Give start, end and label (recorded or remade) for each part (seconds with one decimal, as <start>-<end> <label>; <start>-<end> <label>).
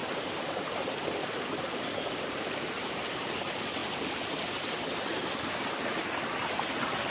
0.0-7.1 recorded